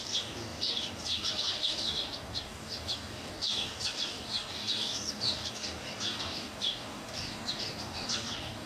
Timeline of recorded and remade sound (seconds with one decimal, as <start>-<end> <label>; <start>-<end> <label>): 0.0-8.7 remade

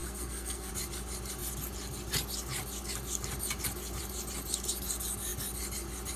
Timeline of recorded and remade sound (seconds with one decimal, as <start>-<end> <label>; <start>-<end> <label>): 0.0-0.7 remade; 0.7-6.2 recorded

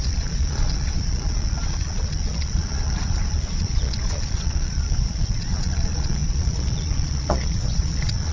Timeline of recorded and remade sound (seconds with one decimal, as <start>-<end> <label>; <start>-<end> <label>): 0.0-8.3 remade

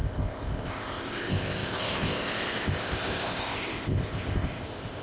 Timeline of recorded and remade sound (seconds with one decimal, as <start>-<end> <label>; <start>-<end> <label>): 0.0-5.0 remade

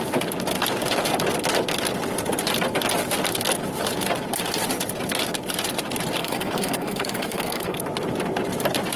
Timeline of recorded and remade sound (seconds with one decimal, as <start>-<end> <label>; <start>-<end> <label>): 0.0-6.2 recorded; 6.2-7.8 remade; 7.8-9.0 recorded

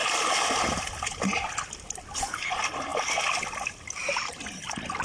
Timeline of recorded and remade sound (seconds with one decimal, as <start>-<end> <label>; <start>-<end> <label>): 0.0-5.0 recorded

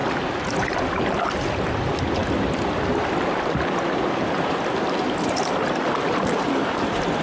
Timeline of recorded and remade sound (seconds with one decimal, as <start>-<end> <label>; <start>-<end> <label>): 0.0-7.2 recorded